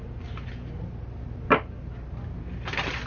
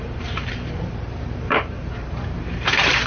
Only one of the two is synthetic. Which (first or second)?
second